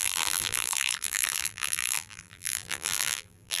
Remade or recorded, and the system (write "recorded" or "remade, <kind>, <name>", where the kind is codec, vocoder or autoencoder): remade, vocoder, BigVGAN v2